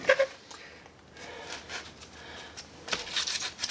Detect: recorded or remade recorded